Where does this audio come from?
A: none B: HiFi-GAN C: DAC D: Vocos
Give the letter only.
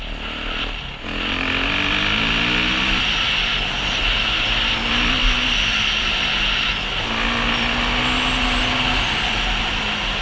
A